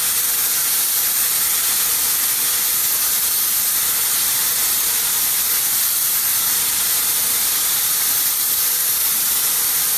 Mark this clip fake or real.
real